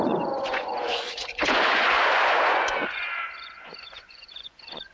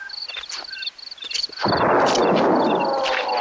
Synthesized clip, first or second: first